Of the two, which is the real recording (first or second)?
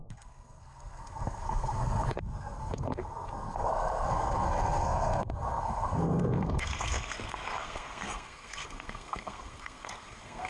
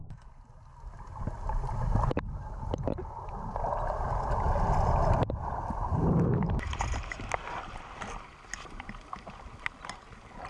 second